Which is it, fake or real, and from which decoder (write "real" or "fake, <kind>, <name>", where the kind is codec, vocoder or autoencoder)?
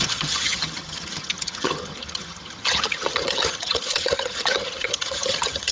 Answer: fake, vocoder, HiFi-GAN